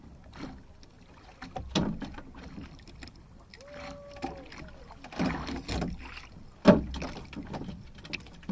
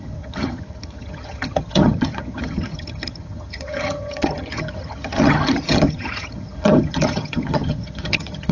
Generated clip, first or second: second